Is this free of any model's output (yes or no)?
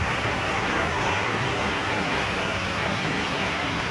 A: no